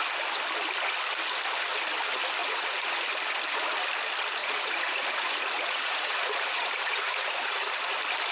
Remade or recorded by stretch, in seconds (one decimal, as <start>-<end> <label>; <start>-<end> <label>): 0.0-2.4 recorded; 2.4-3.1 remade; 3.1-4.4 recorded; 4.4-7.6 remade; 7.6-8.3 recorded